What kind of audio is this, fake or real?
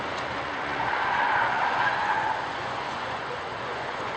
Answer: fake